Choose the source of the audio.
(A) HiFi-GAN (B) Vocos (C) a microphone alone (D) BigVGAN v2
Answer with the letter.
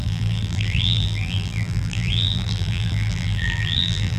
D